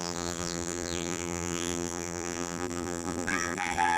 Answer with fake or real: fake